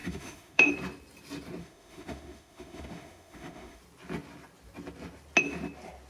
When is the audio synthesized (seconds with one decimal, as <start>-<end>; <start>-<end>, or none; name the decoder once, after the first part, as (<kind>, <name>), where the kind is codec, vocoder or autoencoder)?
0.0-0.7 (autoencoder, DAC-VAE); 1.6-3.8